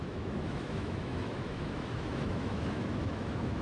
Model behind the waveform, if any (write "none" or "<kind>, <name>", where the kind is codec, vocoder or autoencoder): autoencoder, DAC-VAE